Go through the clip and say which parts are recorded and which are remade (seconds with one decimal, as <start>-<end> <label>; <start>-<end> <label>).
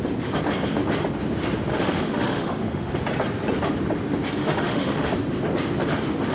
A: 0.0-1.7 recorded; 1.7-3.0 remade; 3.0-4.4 recorded; 4.4-5.1 remade; 5.1-6.3 recorded